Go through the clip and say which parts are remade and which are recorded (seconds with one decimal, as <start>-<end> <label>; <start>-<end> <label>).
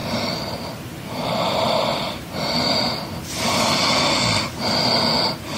0.0-3.3 remade; 3.3-5.6 recorded